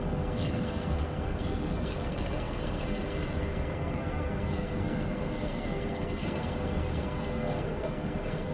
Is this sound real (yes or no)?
no